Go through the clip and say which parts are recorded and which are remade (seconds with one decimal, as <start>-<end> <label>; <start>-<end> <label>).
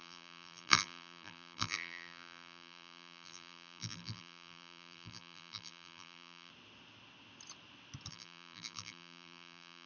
0.0-6.5 remade; 6.5-8.1 recorded; 8.1-9.9 remade